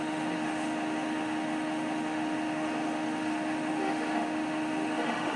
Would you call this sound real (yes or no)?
no